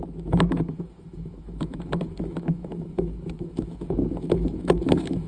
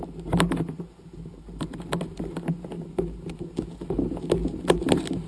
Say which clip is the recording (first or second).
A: second